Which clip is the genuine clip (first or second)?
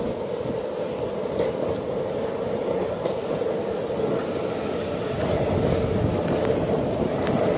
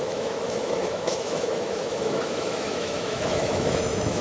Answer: first